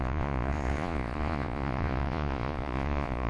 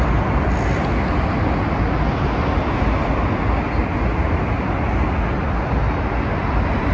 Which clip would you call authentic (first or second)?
second